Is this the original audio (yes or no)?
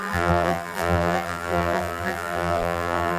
no